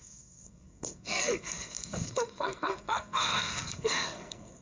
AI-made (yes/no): yes